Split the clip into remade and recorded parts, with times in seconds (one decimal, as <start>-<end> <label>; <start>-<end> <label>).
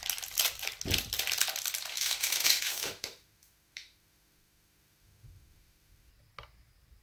0.0-1.9 recorded; 1.9-6.1 remade; 6.1-7.0 recorded